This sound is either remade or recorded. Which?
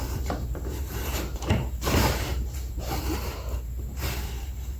remade